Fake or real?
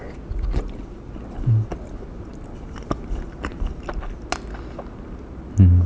real